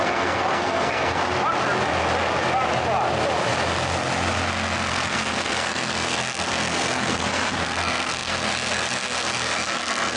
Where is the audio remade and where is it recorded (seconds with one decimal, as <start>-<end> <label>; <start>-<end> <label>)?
0.0-1.2 remade; 1.2-4.9 recorded; 4.9-10.2 remade